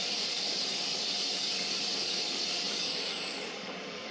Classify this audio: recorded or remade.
remade